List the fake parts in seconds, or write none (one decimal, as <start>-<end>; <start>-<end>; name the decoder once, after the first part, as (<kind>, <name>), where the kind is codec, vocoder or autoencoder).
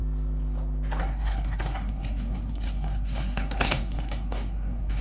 1.0-5.0 (codec, SNAC)